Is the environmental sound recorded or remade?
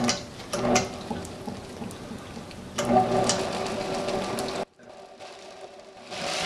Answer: recorded